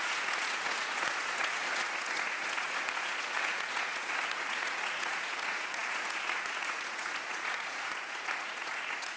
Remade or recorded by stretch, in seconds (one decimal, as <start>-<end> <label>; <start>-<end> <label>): 0.0-9.2 remade